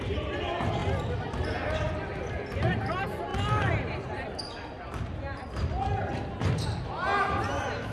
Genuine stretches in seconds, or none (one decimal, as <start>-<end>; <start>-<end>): 0.0-7.9